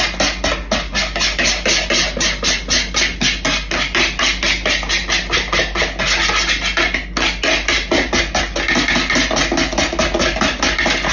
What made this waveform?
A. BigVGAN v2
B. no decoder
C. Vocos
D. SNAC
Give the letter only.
B